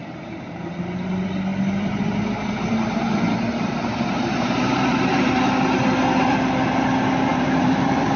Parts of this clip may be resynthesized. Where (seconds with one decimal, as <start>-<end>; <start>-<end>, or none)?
0.0-0.6; 1.5-3.0; 3.5-5.1; 7.3-8.2